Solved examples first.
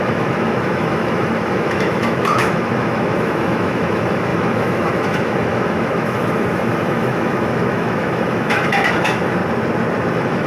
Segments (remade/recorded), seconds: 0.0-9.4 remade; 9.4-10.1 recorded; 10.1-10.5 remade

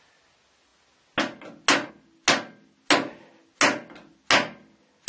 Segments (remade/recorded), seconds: 0.0-5.1 recorded